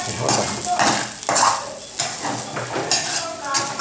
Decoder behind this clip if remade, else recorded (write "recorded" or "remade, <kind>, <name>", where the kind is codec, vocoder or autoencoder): recorded